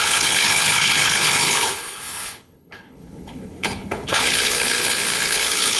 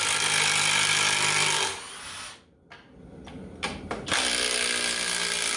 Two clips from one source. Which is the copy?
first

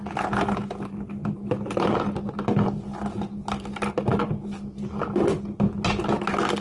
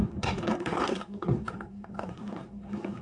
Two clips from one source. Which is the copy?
second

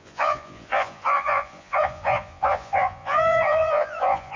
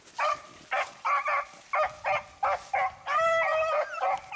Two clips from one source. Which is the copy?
first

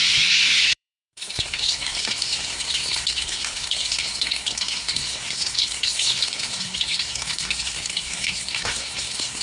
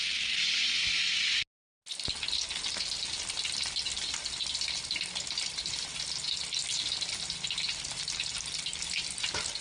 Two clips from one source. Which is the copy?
first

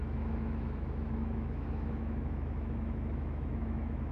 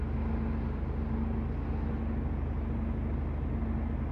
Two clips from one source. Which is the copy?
first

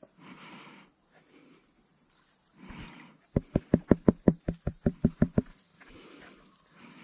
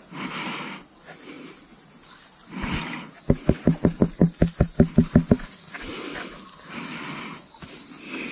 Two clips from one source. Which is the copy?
first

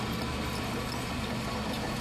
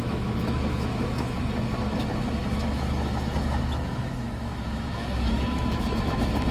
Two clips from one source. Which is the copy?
second